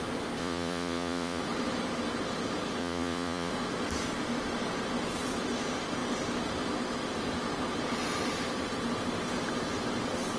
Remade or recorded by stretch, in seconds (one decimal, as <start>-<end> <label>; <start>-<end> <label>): 0.0-0.4 recorded; 0.4-1.4 remade; 1.4-2.8 recorded; 2.8-3.5 remade; 3.5-10.4 recorded